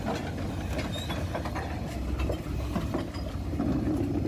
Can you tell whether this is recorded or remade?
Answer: remade